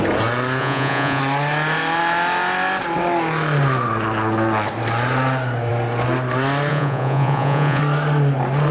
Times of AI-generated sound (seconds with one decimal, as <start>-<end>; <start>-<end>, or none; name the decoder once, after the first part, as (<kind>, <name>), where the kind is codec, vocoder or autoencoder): 0.6-1.2 (vocoder, Vocos); 6.7-7.8